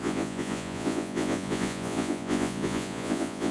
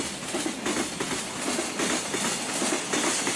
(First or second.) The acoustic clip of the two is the second